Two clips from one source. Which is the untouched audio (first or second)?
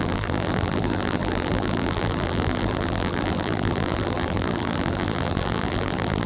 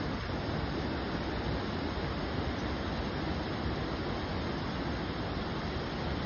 second